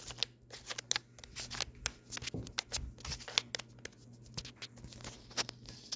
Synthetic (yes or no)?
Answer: no